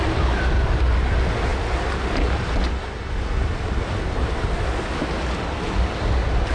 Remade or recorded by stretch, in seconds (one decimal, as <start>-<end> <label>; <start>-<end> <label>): 0.0-6.5 recorded